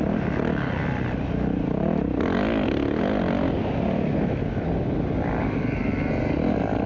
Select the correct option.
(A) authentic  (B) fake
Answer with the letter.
A